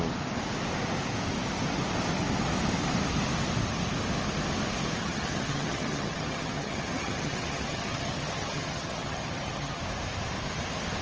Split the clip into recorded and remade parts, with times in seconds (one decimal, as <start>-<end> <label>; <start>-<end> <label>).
0.0-5.0 recorded; 5.0-9.8 remade; 9.8-11.0 recorded

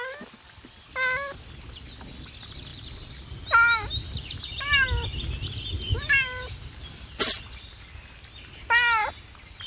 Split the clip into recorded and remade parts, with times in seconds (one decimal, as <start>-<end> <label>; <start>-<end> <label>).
0.0-9.7 recorded

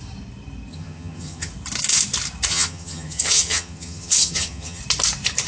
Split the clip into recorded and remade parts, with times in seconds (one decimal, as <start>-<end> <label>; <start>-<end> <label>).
0.0-0.7 recorded; 0.7-1.5 remade; 1.5-2.5 recorded; 2.5-4.8 remade; 4.8-5.5 recorded

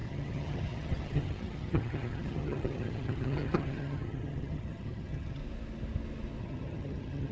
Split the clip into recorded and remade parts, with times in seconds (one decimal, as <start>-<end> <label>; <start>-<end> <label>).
0.0-5.4 remade; 5.4-6.4 recorded; 6.4-7.3 remade

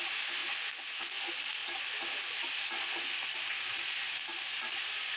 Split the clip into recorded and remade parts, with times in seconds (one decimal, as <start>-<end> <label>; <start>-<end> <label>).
0.0-5.2 recorded